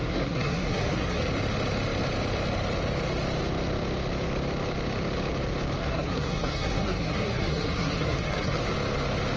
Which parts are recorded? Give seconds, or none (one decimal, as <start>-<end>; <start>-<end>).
1.2-5.8; 8.7-9.4